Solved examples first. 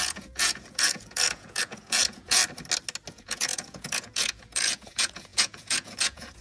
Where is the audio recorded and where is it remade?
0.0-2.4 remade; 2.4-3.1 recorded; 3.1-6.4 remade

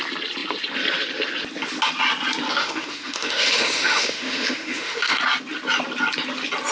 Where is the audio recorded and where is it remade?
0.0-2.6 recorded; 2.6-5.2 remade; 5.2-6.7 recorded

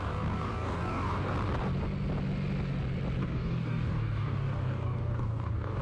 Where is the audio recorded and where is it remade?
0.0-1.3 remade; 1.3-3.2 recorded; 3.2-5.8 remade

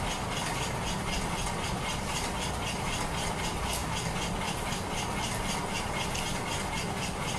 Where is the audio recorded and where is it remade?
0.0-7.4 recorded

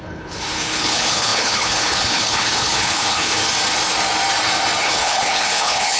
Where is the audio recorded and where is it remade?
0.0-3.4 remade; 3.4-4.8 recorded; 4.8-6.0 remade

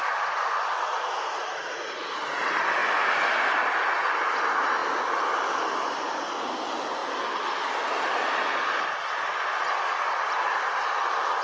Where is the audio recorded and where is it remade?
0.0-11.4 recorded

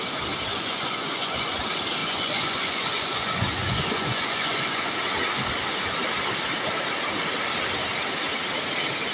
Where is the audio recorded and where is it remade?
0.0-0.5 recorded; 0.5-1.6 remade; 1.6-2.0 recorded; 2.0-4.9 remade; 4.9-9.1 recorded

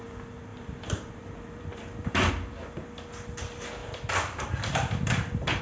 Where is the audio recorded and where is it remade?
0.0-0.5 recorded; 0.5-2.3 remade; 2.3-3.8 recorded; 3.8-5.6 remade